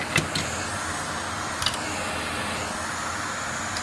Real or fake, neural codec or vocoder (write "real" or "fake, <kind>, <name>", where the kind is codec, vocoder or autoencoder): real